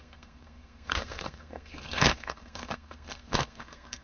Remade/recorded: remade